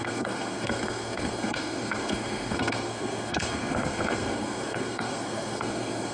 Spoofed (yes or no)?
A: yes